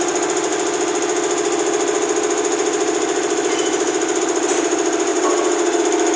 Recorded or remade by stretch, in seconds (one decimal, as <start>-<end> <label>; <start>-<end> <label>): 0.0-5.1 recorded; 5.1-5.8 remade; 5.8-6.2 recorded